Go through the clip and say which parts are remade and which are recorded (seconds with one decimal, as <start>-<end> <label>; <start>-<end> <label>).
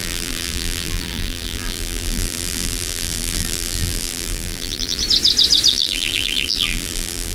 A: 0.0-5.0 remade; 5.0-5.7 recorded; 5.7-7.3 remade